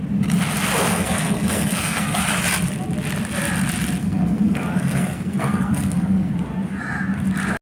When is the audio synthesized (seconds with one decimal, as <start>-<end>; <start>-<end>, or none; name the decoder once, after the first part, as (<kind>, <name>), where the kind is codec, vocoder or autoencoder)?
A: 0.9-2.2 (codec, SNAC); 4.0-6.3